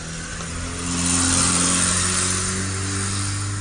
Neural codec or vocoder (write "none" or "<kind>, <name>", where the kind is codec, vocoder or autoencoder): none